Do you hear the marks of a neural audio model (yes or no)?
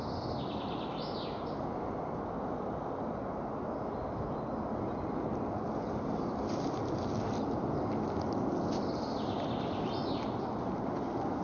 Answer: no